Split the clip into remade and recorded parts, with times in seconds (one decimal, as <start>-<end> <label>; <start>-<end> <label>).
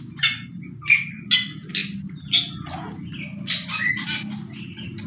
0.0-5.1 recorded